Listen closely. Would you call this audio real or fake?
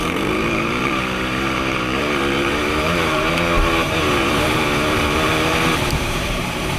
fake